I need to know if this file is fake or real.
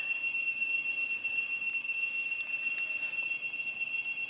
real